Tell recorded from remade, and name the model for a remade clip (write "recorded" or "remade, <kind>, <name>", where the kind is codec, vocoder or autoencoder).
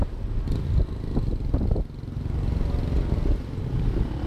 recorded